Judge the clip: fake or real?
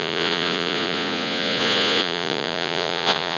fake